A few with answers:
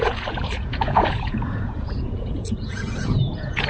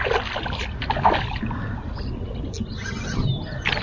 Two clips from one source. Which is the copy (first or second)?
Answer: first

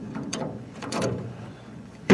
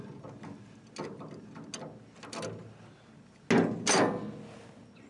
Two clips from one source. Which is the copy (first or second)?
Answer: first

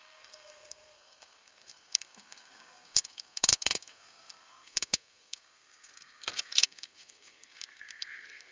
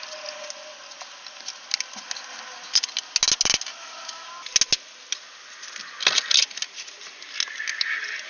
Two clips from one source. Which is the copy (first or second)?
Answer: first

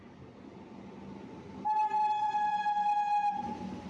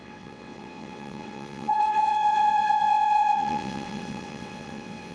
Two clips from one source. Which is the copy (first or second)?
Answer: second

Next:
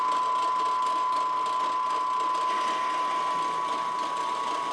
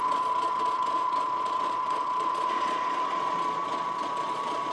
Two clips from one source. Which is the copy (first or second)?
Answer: second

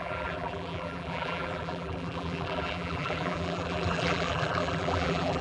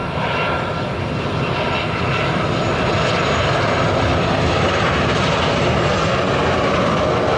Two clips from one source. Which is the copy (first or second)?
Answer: first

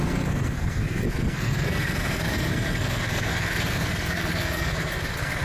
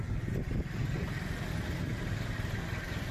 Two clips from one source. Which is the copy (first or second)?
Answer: first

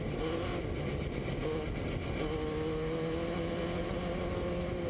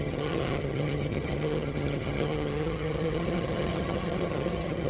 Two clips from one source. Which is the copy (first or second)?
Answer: second